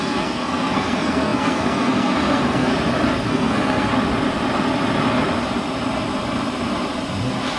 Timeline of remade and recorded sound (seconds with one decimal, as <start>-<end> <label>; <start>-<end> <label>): 0.0-2.7 remade; 2.7-3.3 recorded; 3.3-3.9 remade; 3.9-7.6 recorded